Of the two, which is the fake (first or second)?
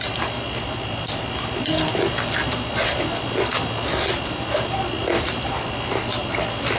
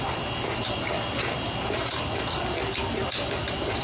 second